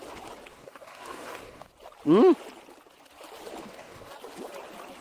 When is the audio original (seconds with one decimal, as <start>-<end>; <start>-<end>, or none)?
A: 0.0-0.5; 1.7-3.6; 4.1-5.0

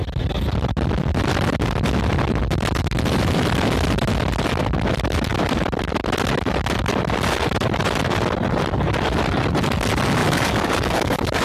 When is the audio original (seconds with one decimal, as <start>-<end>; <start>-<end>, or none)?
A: 0.0-10.2

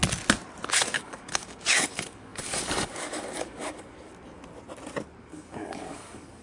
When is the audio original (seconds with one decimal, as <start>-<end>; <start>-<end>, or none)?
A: 0.0-0.7; 4.1-5.2

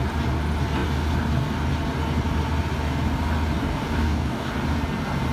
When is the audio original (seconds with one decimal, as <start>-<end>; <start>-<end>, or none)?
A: 0.0-3.6; 4.5-5.3

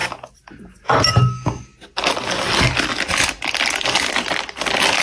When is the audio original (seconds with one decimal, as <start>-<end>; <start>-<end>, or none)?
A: 0.0-1.1; 1.7-5.0

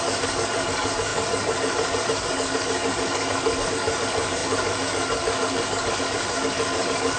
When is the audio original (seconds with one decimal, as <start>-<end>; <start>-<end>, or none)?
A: none

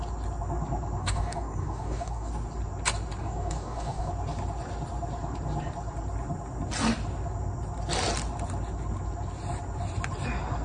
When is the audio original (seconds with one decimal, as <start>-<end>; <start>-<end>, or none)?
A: 0.0-1.0; 2.3-3.2; 4.1-10.6